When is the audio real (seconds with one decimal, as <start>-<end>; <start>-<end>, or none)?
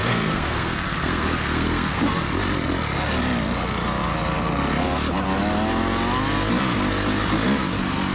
2.0-8.1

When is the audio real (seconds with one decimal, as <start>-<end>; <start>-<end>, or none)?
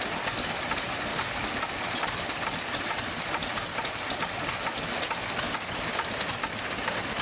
0.0-1.1; 1.7-7.2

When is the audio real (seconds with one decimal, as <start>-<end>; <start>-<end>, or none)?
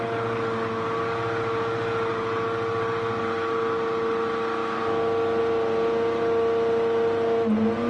0.0-7.9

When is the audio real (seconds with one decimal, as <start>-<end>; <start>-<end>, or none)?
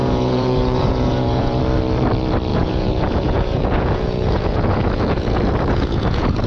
1.6-2.5